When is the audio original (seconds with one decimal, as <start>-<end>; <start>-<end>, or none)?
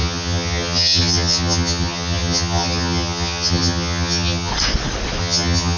4.5-5.2